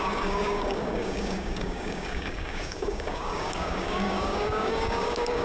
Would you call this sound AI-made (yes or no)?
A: yes